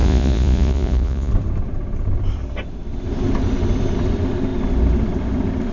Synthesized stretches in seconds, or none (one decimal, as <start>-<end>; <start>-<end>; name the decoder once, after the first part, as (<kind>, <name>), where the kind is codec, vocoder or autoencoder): 0.0-1.3 (vocoder, Vocos)